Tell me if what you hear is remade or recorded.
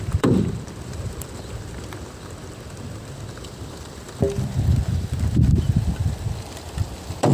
remade